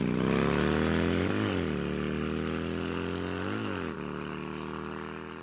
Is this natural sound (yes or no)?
yes